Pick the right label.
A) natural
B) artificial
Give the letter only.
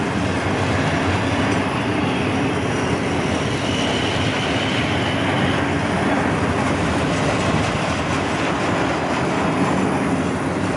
A